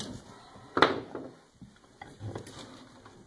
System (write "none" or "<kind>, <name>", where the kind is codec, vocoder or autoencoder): none